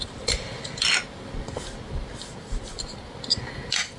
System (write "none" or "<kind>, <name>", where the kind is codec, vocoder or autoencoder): none